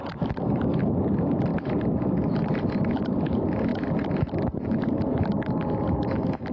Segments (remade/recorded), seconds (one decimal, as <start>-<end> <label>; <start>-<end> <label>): 0.0-1.5 recorded; 1.5-2.6 remade; 2.6-3.7 recorded; 3.7-4.2 remade; 4.2-6.5 recorded